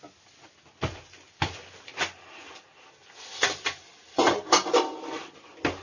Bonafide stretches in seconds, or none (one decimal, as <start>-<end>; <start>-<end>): 0.0-5.8